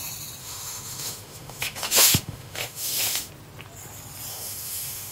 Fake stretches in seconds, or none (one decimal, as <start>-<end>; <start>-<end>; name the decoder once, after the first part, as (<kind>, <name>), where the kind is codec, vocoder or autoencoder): 0.4-3.3 (autoencoder, DAC-VAE); 4.3-5.1